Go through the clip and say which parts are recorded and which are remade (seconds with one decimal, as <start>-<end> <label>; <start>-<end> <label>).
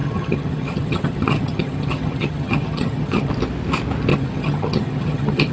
0.0-3.3 remade; 3.3-4.1 recorded; 4.1-5.5 remade